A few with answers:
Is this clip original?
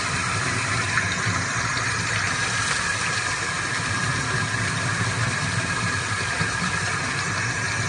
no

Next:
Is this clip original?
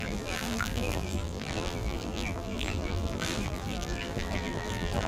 no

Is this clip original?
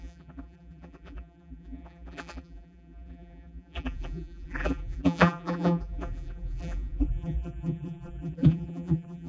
no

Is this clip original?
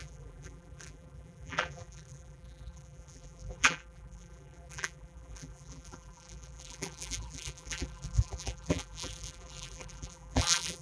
no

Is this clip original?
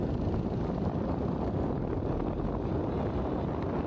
yes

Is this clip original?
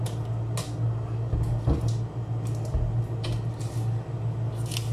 yes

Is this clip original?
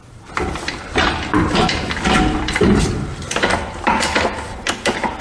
no